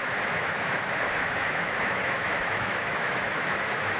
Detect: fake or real fake